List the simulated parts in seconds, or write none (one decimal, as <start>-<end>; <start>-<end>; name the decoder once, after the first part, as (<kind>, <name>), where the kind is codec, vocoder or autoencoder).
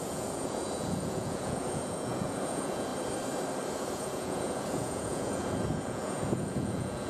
0.0-2.9 (vocoder, Vocos); 3.9-7.1